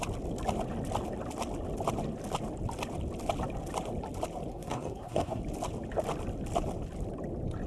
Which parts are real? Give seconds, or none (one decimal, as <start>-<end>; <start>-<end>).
0.0-4.5; 5.4-7.7